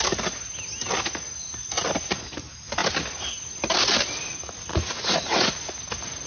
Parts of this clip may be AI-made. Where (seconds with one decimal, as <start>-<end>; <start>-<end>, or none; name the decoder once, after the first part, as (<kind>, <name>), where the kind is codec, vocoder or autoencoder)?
4.7-5.5 (vocoder, Vocos)